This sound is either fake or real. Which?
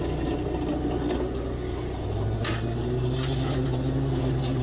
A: real